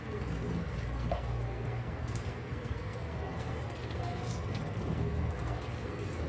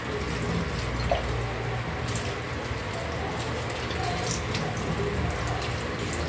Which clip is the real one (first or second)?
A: second